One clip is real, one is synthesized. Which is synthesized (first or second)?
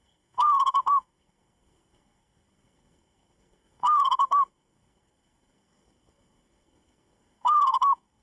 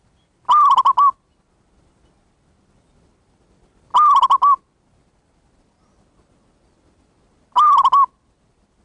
first